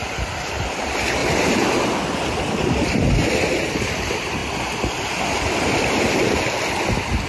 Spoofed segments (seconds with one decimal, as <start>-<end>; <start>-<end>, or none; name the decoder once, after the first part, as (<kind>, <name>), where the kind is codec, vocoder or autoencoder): 0.0-1.2 (vocoder, BigVGAN v2); 3.7-4.4; 5.8-7.3